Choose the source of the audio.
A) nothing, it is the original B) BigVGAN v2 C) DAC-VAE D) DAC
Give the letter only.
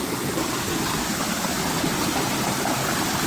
A